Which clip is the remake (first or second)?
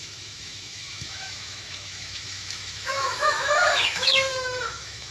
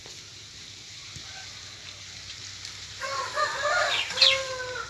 first